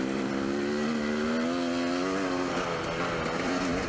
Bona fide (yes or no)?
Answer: yes